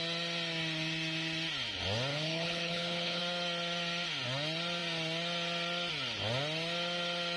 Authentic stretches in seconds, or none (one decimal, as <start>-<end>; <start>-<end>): 0.0-2.1; 3.2-7.4